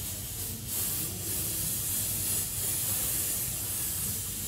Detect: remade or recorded recorded